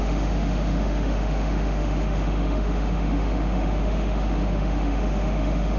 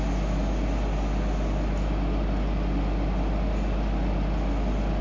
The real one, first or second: second